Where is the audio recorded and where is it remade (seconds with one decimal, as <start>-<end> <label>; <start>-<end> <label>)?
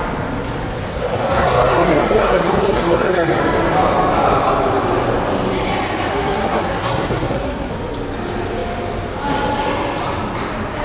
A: 0.0-0.9 recorded; 0.9-3.4 remade; 3.4-6.1 recorded; 6.1-7.7 remade; 7.7-10.8 recorded